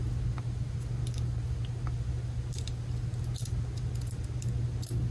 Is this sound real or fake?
real